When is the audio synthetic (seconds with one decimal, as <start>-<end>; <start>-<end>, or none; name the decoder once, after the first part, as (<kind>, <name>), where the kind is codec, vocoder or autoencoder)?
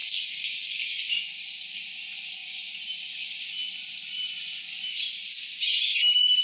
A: none